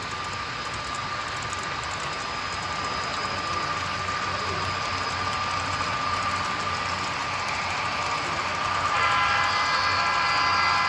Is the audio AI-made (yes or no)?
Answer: no